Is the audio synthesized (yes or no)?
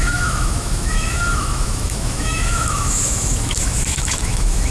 yes